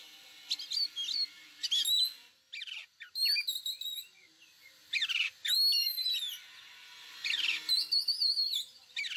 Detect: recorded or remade recorded